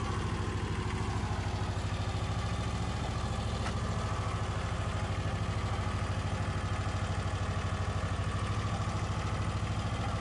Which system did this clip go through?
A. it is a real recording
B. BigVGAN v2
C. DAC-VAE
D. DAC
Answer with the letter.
A